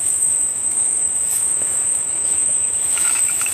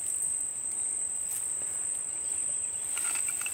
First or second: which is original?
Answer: second